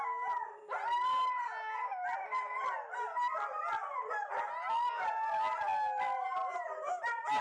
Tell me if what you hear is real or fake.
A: real